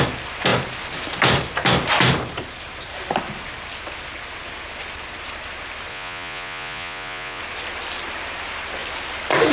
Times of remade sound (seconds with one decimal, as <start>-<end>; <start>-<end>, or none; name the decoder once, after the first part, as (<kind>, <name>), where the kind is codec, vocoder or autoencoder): 5.9-7.4 (vocoder, Vocos)